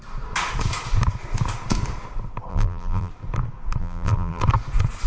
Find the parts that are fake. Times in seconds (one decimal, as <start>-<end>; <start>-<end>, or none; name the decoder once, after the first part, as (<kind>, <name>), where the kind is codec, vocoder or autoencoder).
2.5-3.1 (vocoder, BigVGAN v2); 3.8-4.4